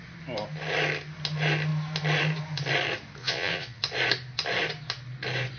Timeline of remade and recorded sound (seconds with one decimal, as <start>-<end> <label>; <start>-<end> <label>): 0.0-3.2 recorded; 3.2-3.8 remade; 3.8-5.6 recorded